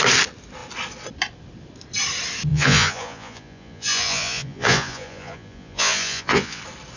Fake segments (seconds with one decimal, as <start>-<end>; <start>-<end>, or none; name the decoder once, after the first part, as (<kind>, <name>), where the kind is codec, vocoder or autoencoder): 2.5-6.6 (vocoder, Vocos)